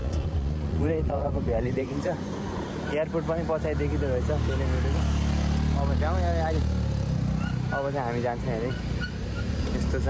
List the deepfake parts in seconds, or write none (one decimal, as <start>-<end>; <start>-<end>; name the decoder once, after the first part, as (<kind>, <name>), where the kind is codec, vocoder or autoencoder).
0.0-2.6 (vocoder, Vocos)